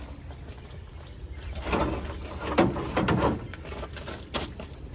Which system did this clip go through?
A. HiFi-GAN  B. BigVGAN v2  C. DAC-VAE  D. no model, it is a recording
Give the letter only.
D